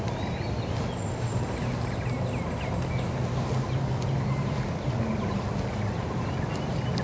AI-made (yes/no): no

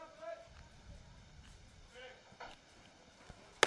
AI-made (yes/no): no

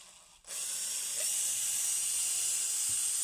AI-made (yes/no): no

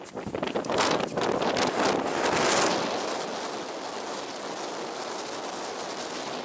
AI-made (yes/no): no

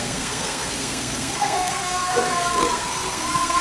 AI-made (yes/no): yes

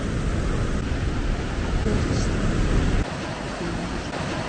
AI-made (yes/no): no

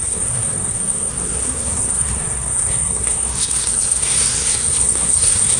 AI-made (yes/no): yes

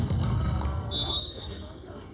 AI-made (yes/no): yes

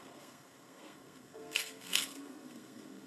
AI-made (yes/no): yes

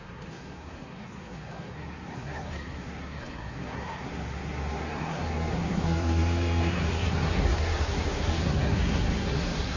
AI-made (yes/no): yes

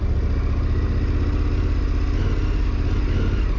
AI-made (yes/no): no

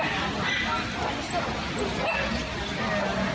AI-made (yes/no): no